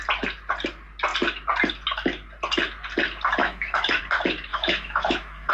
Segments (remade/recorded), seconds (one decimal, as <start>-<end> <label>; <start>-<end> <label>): 0.0-3.4 recorded; 3.4-4.0 remade; 4.0-4.5 recorded; 4.5-5.5 remade

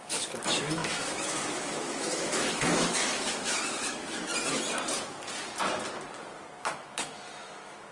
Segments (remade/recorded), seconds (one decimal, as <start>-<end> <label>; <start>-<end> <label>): 0.0-4.3 remade; 4.3-6.6 recorded; 6.6-7.9 remade

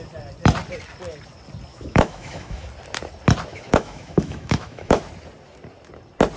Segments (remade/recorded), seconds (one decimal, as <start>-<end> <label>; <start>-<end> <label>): 0.0-1.7 recorded; 1.7-2.7 remade; 2.7-3.5 recorded; 3.5-5.0 remade; 5.0-6.4 recorded

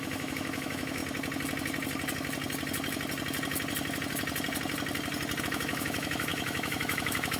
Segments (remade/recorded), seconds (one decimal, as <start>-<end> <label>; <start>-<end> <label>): 0.0-1.0 remade; 1.0-5.4 recorded; 5.4-7.4 remade

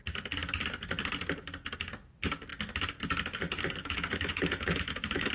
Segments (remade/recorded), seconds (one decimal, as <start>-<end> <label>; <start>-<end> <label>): 0.0-3.8 recorded; 3.8-5.3 remade

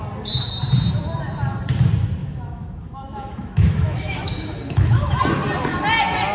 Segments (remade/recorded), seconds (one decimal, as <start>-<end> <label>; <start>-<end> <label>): 0.0-2.2 recorded; 2.2-5.2 remade; 5.2-6.3 recorded